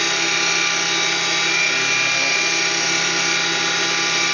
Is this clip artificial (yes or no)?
no